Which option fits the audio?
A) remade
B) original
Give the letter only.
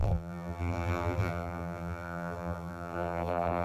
A